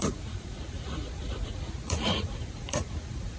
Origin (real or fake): fake